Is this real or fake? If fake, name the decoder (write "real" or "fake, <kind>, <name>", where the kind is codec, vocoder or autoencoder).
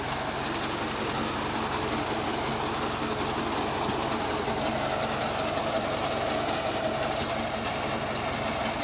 real